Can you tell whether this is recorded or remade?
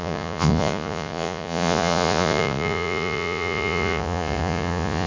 remade